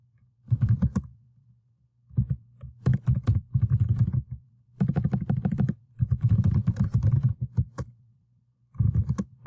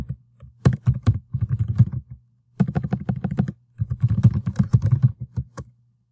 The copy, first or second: first